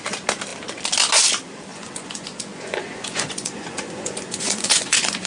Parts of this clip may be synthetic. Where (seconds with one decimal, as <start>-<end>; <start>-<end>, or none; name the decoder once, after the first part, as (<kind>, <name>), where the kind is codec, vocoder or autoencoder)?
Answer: 1.7-5.3 (vocoder, Vocos)